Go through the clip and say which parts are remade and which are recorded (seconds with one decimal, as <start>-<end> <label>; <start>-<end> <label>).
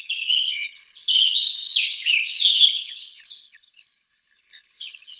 0.0-5.2 remade